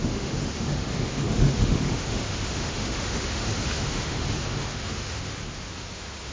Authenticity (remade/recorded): remade